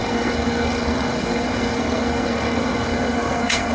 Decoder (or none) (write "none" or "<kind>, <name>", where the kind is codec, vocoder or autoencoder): codec, SNAC